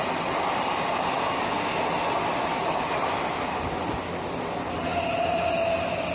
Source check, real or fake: real